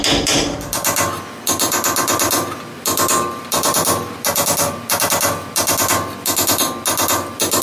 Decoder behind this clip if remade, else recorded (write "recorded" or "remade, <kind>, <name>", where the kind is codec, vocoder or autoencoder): recorded